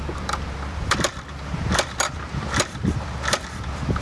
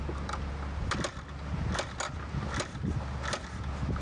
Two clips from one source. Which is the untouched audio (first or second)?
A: second